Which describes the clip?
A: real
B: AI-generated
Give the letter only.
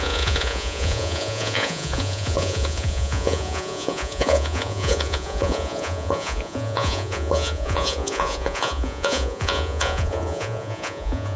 B